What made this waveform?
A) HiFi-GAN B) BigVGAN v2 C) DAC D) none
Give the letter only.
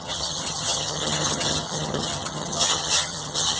A